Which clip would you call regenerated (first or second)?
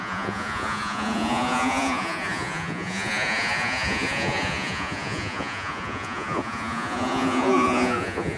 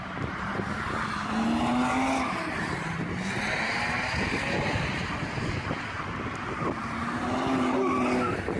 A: first